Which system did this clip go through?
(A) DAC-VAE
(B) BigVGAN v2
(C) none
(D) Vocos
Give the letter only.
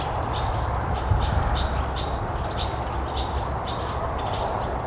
C